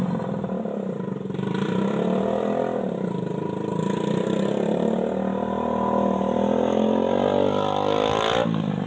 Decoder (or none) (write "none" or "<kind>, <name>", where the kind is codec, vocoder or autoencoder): none